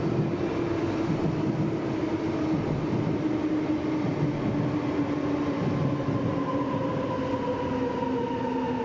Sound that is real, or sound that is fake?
real